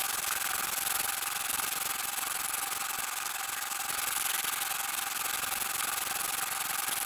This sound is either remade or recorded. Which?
recorded